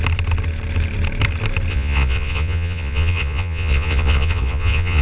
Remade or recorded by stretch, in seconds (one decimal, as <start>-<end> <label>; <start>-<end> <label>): 0.0-1.7 recorded; 1.7-5.0 remade